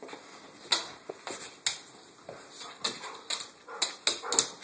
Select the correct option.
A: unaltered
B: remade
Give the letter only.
A